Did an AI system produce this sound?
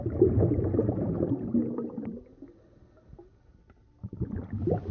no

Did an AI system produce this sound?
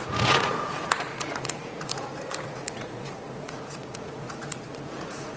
yes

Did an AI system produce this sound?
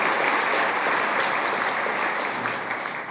no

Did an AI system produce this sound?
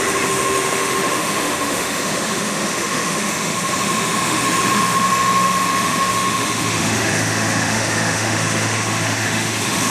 yes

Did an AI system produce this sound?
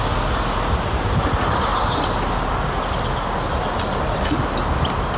no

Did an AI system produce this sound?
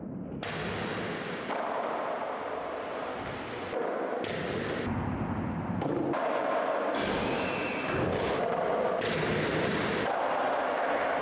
no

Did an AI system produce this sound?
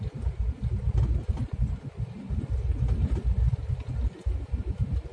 no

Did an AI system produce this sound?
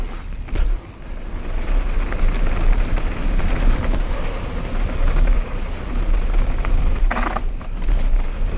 no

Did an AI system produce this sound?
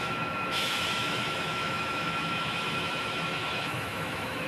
yes